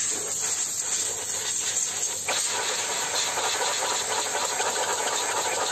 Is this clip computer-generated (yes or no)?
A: no